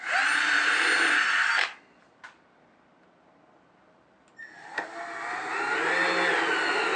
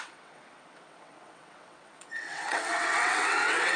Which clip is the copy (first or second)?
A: second